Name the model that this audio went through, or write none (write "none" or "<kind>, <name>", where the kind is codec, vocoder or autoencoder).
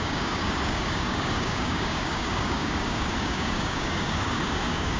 codec, DAC